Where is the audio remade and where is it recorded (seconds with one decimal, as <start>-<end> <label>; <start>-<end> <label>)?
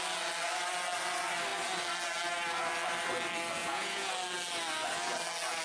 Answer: 0.0-3.6 recorded; 3.6-4.1 remade; 4.1-5.6 recorded